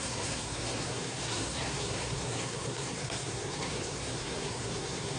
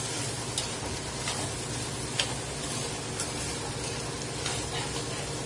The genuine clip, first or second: second